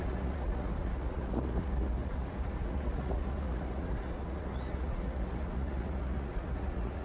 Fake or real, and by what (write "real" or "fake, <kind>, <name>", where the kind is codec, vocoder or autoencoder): fake, vocoder, Vocos